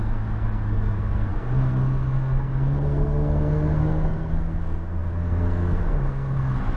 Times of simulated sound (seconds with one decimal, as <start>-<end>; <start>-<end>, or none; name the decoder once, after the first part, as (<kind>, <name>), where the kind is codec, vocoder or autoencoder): 0.0-6.8 (codec, SNAC)